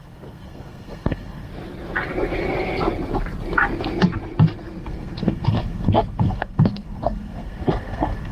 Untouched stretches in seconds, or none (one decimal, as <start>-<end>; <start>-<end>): 1.5-4.8